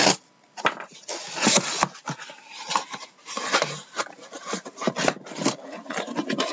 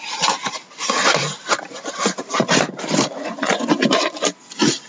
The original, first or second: first